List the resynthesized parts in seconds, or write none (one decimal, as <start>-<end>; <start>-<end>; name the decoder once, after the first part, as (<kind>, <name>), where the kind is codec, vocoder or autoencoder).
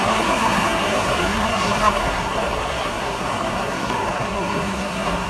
0.0-5.3 (codec, SNAC)